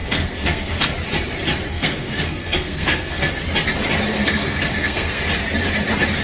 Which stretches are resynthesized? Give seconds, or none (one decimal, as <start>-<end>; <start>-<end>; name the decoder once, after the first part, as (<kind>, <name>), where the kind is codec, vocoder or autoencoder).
0.0-0.9 (codec, SNAC); 1.7-3.3; 4.1-5.2